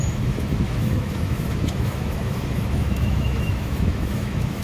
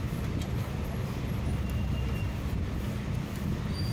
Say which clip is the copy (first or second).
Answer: first